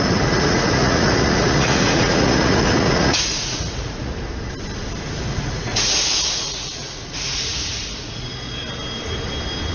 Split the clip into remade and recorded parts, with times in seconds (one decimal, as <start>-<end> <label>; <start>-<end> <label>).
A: 0.0-4.1 remade; 4.1-5.3 recorded; 5.3-8.3 remade; 8.3-9.7 recorded